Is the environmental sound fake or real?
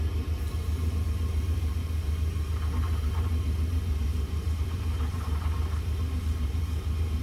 fake